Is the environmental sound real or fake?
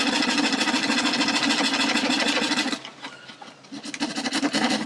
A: real